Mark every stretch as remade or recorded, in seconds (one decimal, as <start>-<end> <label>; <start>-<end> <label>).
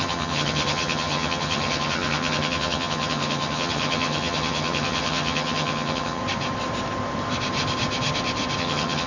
0.0-6.2 remade; 6.2-8.6 recorded; 8.6-9.1 remade